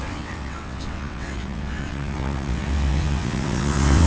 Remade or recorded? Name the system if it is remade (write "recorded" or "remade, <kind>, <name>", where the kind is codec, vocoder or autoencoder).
remade, vocoder, WaveNeXt